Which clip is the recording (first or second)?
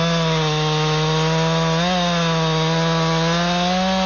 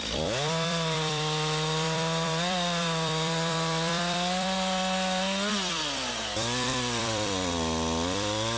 first